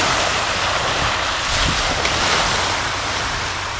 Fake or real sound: real